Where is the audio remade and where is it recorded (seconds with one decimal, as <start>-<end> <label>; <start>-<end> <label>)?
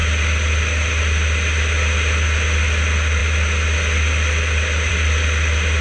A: 0.0-5.8 recorded